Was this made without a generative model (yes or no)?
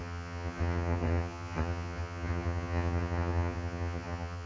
no